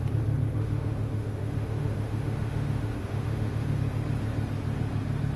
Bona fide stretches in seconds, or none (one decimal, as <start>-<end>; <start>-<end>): 0.0-0.6; 3.8-5.4